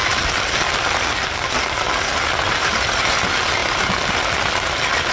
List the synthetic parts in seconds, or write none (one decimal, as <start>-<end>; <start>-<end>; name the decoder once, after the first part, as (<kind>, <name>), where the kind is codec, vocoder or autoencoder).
none